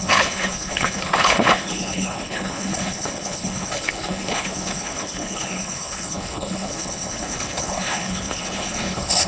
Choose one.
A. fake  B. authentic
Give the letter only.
A